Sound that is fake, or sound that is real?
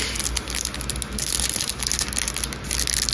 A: real